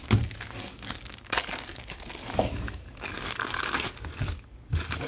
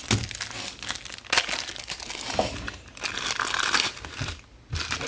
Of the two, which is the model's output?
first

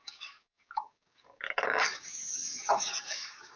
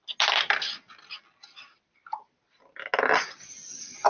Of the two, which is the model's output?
first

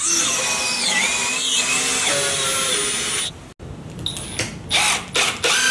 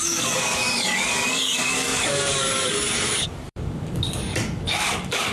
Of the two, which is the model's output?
second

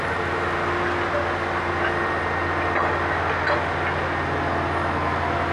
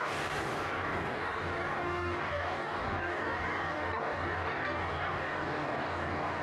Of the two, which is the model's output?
second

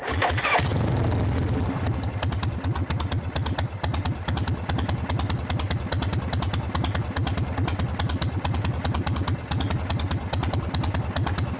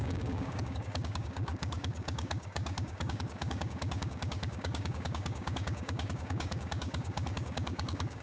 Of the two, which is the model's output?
second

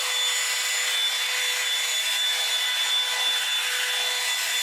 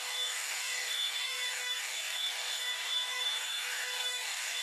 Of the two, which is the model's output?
second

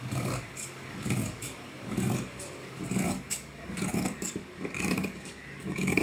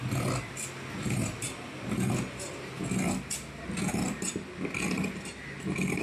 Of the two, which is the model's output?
first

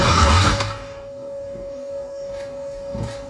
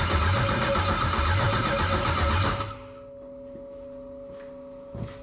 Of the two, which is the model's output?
first